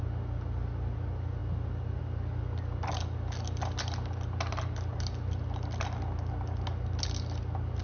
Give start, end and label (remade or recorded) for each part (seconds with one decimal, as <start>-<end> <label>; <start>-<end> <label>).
0.0-7.8 recorded